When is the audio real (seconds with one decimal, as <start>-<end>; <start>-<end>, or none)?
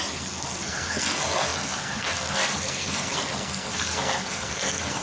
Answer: none